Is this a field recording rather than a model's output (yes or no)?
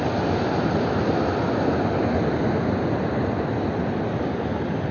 yes